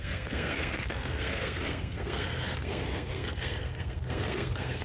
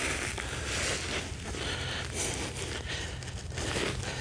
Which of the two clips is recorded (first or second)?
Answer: second